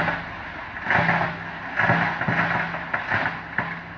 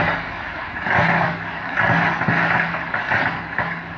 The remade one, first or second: second